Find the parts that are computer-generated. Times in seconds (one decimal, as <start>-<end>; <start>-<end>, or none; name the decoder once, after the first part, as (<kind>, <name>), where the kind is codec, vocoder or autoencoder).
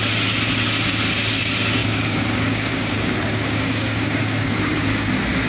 1.8-5.1 (codec, DAC)